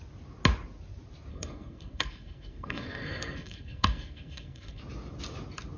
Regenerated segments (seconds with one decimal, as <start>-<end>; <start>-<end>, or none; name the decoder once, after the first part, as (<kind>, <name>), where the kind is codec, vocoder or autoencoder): 1.3-4.8 (codec, SNAC)